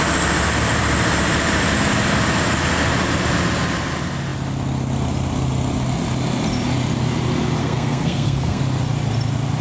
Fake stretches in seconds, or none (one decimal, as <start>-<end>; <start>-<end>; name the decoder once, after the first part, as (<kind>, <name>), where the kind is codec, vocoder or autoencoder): 7.6-8.6 (codec, SNAC)